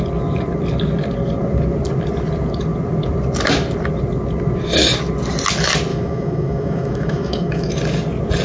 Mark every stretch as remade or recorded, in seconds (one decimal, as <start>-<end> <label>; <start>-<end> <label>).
0.0-5.9 recorded; 5.9-7.7 remade; 7.7-8.4 recorded